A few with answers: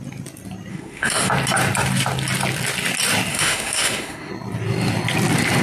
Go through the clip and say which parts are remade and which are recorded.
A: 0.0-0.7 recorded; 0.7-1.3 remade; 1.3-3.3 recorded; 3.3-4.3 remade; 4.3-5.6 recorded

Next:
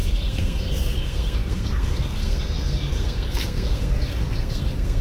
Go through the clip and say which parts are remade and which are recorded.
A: 0.0-5.0 remade

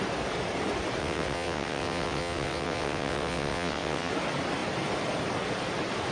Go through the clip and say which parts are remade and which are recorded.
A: 0.0-1.0 recorded; 1.0-4.1 remade; 4.1-6.1 recorded

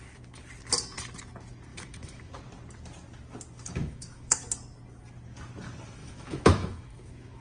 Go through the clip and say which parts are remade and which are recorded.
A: 0.0-1.7 recorded; 1.7-2.3 remade; 2.3-3.8 recorded; 3.8-4.5 remade; 4.5-6.0 recorded; 6.0-7.4 remade